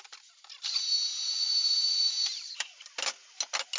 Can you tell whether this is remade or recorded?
recorded